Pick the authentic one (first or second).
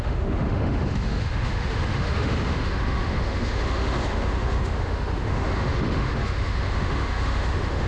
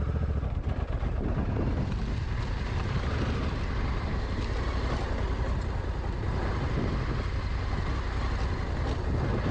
second